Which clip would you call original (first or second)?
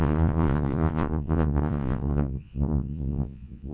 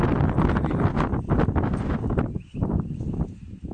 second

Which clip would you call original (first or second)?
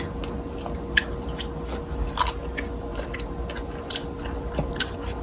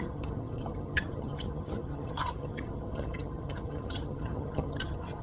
first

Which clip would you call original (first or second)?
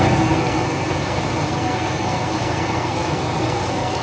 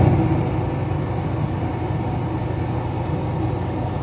second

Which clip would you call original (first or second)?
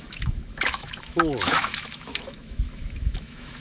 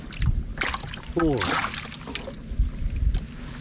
second